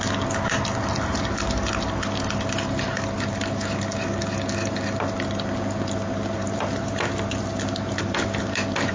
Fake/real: real